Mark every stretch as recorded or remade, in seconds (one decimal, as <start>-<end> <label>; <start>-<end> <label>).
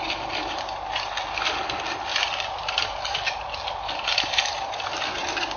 0.0-5.6 recorded